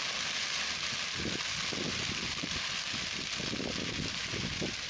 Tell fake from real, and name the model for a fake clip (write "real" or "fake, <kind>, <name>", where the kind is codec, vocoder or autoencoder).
real